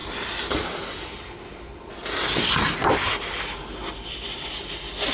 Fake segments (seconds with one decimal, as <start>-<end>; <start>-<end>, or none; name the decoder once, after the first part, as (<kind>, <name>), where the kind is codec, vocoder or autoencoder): none